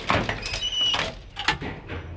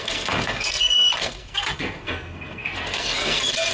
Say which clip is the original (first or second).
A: first